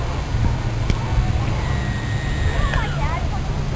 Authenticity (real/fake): real